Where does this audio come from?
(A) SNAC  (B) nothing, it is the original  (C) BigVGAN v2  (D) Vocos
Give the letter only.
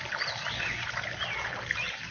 B